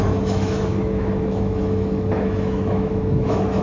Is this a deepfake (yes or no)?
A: yes